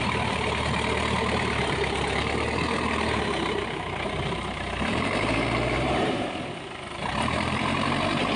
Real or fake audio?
fake